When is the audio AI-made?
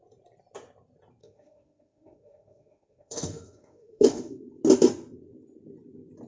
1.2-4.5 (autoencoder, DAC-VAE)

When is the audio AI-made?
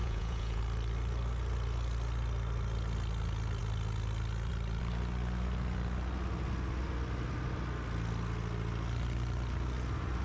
0.0-0.6 (vocoder, Vocos)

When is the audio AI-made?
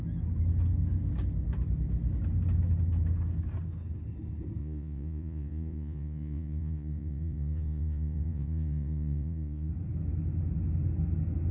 4.6-9.7 (vocoder, Vocos)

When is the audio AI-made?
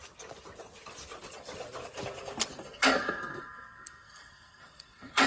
2.6-5.3 (codec, SNAC)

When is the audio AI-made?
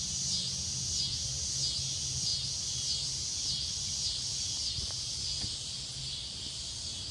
none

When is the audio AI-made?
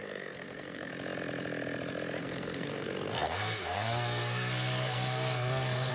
0.0-0.9 (codec, SNAC); 2.2-5.9